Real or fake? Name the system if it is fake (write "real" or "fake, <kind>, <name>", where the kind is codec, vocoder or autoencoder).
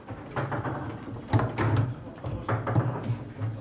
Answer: real